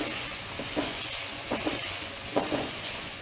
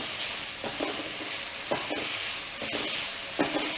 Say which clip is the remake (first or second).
first